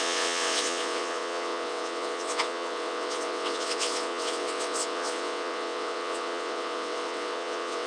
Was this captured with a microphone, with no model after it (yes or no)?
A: no